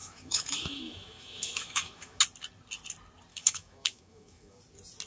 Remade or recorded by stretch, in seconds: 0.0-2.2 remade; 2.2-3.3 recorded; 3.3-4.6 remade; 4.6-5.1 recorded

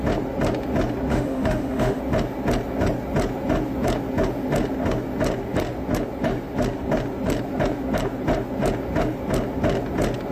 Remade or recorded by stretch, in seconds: 0.0-1.1 recorded; 1.1-2.0 remade; 2.0-10.3 recorded

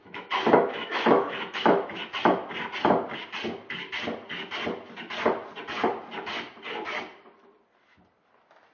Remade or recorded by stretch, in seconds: 0.0-2.0 remade; 2.0-8.7 recorded

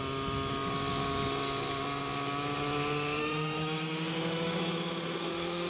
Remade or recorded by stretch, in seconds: 0.0-3.2 recorded; 3.2-5.7 remade

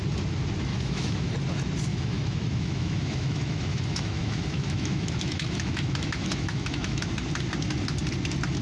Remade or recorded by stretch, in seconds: 0.0-0.7 recorded; 0.7-1.3 remade; 1.3-1.9 recorded; 1.9-7.1 remade; 7.1-8.6 recorded

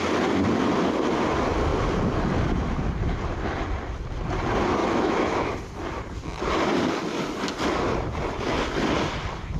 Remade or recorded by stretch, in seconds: 0.0-4.8 recorded; 4.8-5.5 remade; 5.5-9.6 recorded

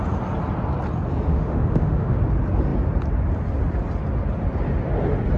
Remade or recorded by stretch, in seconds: 0.0-1.3 recorded; 1.3-2.2 remade; 2.2-5.4 recorded